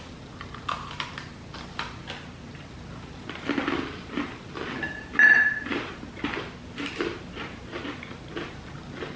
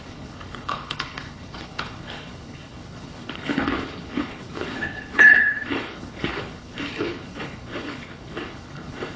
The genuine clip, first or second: first